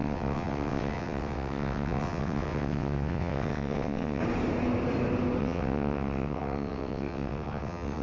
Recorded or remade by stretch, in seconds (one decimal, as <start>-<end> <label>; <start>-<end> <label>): 0.0-4.2 remade; 4.2-5.4 recorded; 5.4-8.0 remade